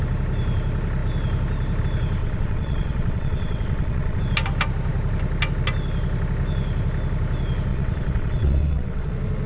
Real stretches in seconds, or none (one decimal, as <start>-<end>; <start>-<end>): 0.0-2.2; 4.2-7.7; 9.1-9.5

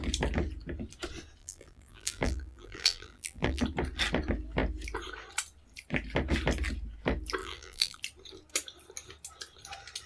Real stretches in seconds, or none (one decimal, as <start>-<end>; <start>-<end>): 0.0-1.4; 3.6-7.4; 8.0-10.1

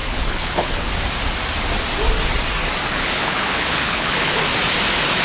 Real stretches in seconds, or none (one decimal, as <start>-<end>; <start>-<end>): 0.9-2.8; 4.4-5.2

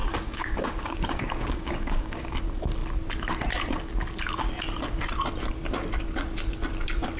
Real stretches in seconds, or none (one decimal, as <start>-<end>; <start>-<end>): 2.4-7.2

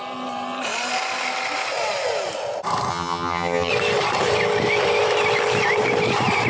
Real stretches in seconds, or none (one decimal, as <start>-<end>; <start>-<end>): 0.0-2.9; 3.7-6.5

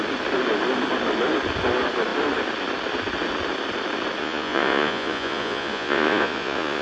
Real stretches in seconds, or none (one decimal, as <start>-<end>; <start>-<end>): 0.0-4.2